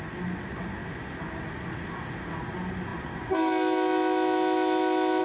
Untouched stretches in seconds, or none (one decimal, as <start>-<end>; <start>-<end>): 0.0-5.2